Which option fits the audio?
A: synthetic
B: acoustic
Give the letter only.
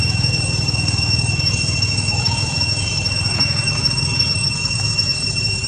A